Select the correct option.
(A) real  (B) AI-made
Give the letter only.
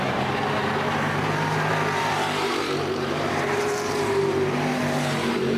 B